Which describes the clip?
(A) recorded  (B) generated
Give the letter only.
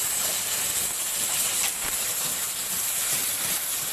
B